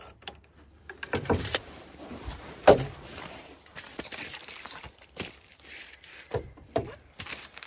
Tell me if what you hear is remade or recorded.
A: remade